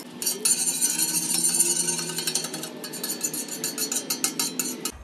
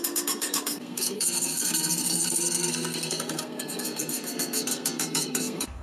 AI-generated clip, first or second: second